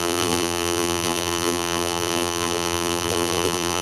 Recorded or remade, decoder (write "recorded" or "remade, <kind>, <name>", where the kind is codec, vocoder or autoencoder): remade, vocoder, BigVGAN v2